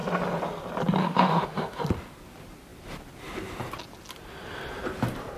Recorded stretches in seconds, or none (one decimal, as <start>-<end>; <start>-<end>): 0.0-1.0; 1.8-5.4